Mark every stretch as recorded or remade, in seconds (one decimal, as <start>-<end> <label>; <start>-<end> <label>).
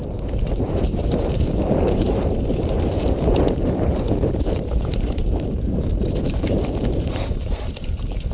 0.0-8.3 remade